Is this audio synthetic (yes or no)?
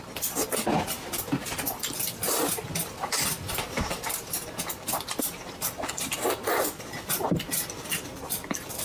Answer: yes